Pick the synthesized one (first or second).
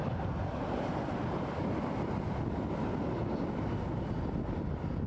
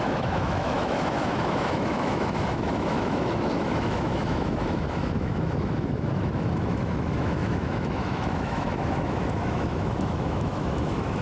second